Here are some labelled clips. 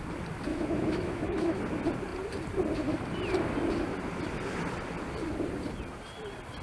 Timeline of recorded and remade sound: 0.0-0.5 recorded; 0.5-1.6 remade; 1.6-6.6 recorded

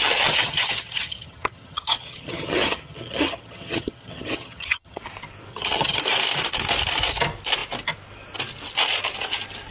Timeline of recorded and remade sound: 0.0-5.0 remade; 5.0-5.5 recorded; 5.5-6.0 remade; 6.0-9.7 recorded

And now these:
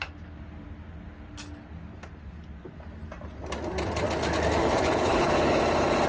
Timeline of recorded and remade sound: 0.0-4.6 recorded; 4.6-5.6 remade; 5.6-6.1 recorded

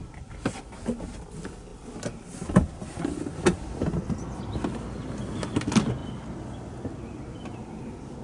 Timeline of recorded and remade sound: 0.0-8.2 recorded